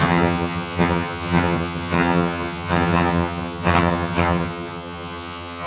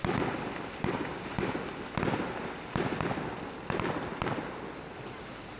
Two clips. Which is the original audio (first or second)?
second